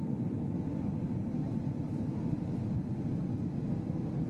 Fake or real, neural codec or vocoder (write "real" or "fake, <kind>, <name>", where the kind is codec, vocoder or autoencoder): fake, vocoder, BigVGAN v2